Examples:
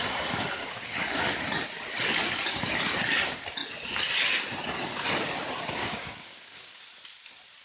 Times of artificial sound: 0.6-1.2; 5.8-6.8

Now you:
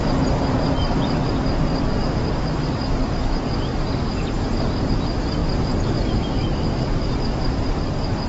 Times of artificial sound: 0.0-3.7; 4.8-5.4; 6.2-8.3